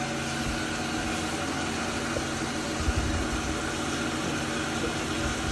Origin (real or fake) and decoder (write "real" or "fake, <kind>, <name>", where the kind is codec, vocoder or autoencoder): real